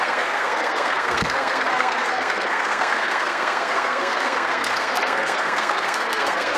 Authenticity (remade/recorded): remade